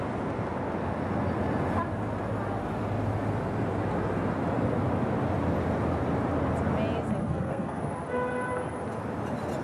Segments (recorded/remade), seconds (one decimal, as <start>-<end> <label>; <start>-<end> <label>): 0.0-7.2 recorded; 7.2-7.8 remade; 7.8-9.6 recorded